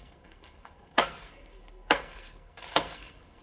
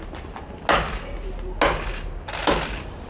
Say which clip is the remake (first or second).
first